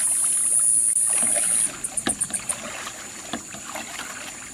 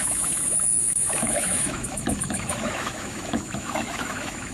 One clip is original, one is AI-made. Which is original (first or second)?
first